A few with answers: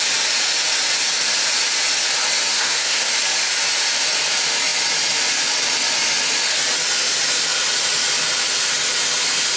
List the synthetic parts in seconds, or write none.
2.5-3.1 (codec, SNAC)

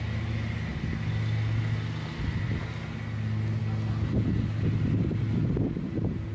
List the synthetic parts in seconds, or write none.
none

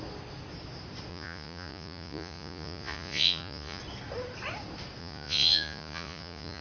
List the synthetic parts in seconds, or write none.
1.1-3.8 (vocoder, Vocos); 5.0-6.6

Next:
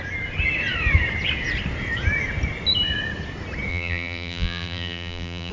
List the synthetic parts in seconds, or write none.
3.7-5.5 (vocoder, BigVGAN v2)

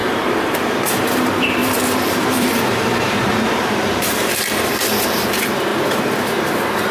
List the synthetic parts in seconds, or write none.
0.0-0.8 (vocoder, BigVGAN v2); 1.6-4.3; 5.7-6.5

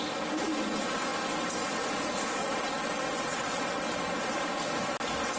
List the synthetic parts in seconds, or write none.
2.4-4.1 (vocoder, WaveNeXt)